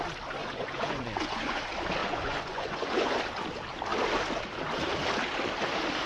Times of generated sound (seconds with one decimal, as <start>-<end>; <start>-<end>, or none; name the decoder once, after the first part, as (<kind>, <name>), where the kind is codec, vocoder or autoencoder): 0.4-1.6 (vocoder, Vocos); 2.0-3.2